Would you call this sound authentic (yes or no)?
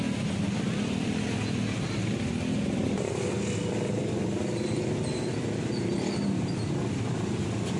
yes